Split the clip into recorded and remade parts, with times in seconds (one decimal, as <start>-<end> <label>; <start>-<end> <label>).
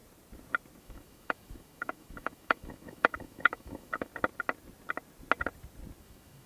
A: 0.0-0.8 recorded; 0.8-4.1 remade; 4.1-6.0 recorded; 6.0-6.5 remade